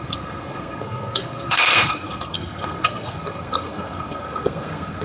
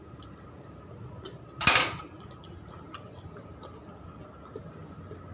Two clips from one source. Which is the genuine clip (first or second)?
second